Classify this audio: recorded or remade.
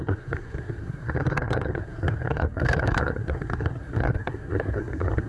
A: remade